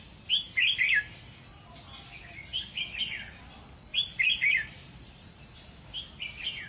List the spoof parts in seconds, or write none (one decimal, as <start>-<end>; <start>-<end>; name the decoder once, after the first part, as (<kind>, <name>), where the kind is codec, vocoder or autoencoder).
3.9-5.4 (vocoder, BigVGAN v2)